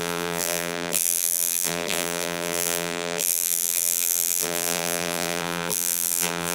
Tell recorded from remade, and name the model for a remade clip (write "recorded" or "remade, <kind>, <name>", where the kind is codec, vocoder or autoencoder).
remade, vocoder, BigVGAN v2